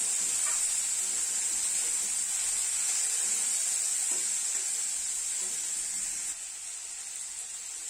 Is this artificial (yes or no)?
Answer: no